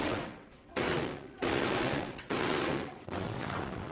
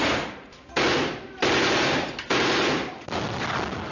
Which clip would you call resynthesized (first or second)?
first